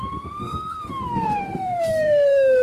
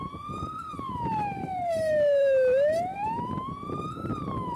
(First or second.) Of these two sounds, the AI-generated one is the first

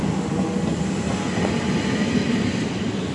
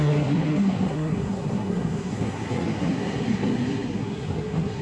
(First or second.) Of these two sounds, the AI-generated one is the second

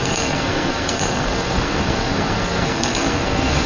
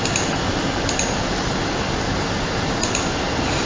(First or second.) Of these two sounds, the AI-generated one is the first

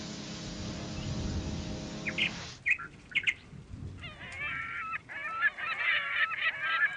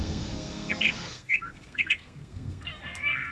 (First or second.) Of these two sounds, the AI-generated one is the second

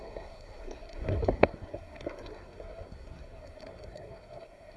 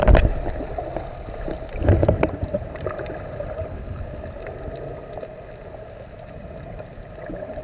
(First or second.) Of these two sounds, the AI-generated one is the first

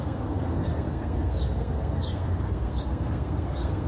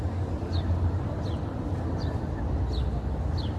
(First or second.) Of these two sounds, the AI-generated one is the first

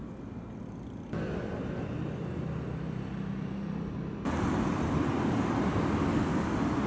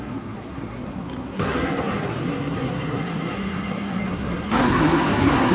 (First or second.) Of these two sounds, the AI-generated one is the second